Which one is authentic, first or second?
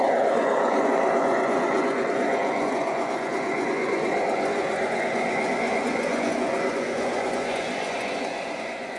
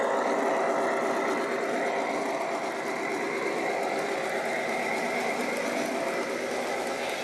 second